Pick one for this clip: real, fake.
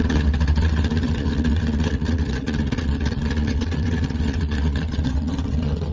fake